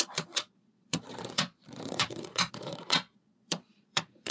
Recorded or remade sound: remade